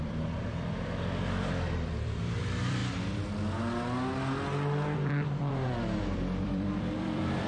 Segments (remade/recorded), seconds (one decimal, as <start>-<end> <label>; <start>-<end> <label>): 0.0-2.8 remade; 2.8-5.5 recorded; 5.5-7.5 remade